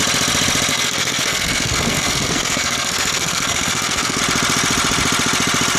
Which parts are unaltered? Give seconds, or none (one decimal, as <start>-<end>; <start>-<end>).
0.0-0.7; 4.2-5.8